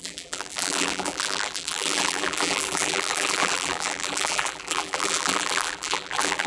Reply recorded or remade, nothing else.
remade